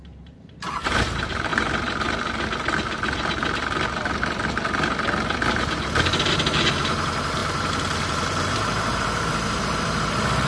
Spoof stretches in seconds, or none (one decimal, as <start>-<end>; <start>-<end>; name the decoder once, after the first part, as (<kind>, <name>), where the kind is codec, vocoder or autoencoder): 0.0-1.5 (vocoder, BigVGAN v2); 6.7-10.5